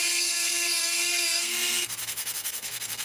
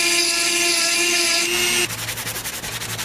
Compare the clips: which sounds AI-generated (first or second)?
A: first